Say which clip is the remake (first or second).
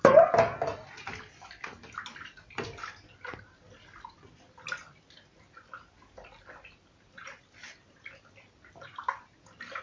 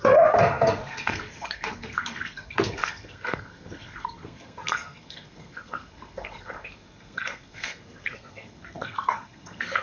second